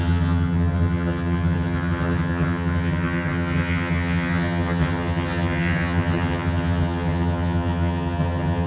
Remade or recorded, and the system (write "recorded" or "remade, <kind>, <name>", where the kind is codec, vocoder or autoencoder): remade, vocoder, HiFi-GAN